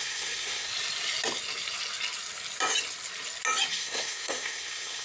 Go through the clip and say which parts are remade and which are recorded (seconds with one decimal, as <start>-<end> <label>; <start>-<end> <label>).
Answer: 0.0-0.7 remade; 0.7-3.7 recorded; 3.7-5.0 remade